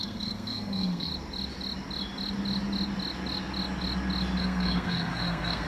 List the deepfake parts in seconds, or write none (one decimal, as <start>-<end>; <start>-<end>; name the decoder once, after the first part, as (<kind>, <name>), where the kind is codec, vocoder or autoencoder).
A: 0.0-1.1 (codec, SNAC); 4.4-5.7